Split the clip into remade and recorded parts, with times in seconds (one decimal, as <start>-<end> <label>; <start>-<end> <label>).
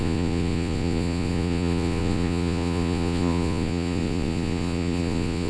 0.0-5.5 remade